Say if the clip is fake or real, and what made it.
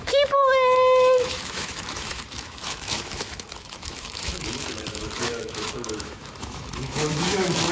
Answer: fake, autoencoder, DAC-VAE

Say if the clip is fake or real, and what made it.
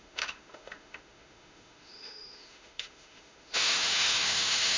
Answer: fake, autoencoder, DAC-VAE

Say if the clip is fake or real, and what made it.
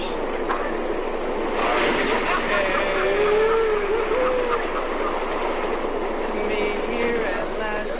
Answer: real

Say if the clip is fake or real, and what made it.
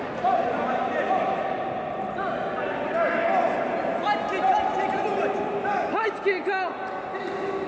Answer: real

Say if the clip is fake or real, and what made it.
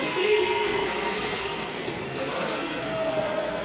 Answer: fake, codec, SNAC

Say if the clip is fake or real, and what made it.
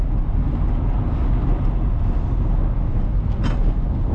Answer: real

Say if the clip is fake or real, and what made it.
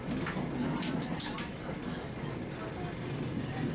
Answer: real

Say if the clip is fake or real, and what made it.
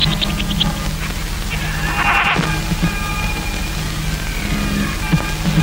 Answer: real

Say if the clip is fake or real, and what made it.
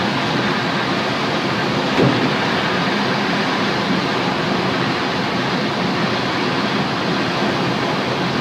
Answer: real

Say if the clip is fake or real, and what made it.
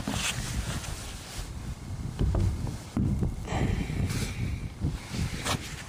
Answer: real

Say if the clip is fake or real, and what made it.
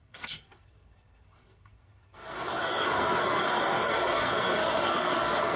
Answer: fake, codec, SNAC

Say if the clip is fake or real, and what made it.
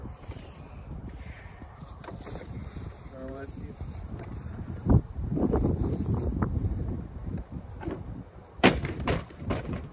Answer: fake, vocoder, BigVGAN v2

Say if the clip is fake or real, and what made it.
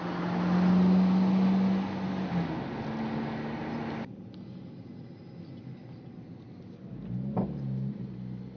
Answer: real